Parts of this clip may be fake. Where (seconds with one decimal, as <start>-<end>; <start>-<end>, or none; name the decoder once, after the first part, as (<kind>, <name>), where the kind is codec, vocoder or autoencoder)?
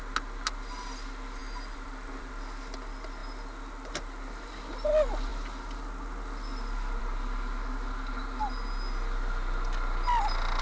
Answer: 1.4-2.3 (vocoder, BigVGAN v2)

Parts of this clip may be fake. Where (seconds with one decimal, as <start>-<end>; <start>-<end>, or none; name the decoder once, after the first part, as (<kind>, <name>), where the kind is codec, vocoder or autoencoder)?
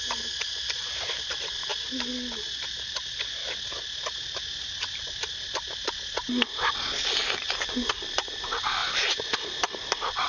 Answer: 0.0-1.7 (vocoder, BigVGAN v2); 2.4-3.4; 4.6-6.2; 7.2-10.3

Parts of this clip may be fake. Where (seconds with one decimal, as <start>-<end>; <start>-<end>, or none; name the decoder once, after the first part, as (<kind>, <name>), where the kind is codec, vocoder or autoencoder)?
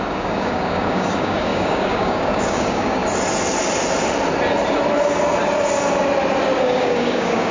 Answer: 0.0-3.0 (codec, DAC); 6.6-7.5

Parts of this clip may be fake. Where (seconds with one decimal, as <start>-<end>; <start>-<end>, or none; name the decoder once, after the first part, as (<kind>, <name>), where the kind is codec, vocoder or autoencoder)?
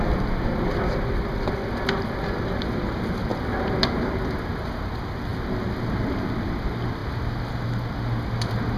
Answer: none